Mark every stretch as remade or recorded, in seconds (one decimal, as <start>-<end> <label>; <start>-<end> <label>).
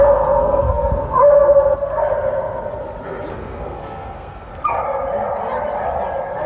0.0-0.4 recorded; 0.4-0.9 remade; 0.9-3.3 recorded; 3.3-4.5 remade; 4.5-6.5 recorded